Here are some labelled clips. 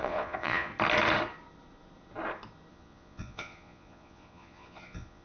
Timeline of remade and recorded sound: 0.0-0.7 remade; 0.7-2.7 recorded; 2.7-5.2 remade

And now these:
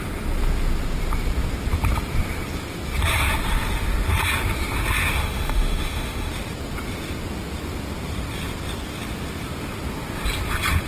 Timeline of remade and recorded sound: 0.0-5.0 recorded; 5.0-6.3 remade; 6.3-10.9 recorded